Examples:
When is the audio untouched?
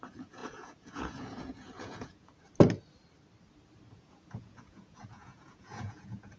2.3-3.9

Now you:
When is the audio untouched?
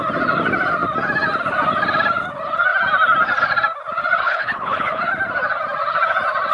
0.0-4.2; 5.0-6.5